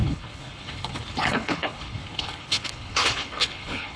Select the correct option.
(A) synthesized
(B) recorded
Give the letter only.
A